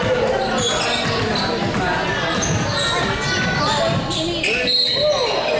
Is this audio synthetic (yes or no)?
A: no